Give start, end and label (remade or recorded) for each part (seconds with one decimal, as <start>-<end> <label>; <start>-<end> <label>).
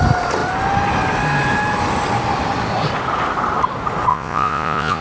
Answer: 0.0-4.1 recorded; 4.1-5.0 remade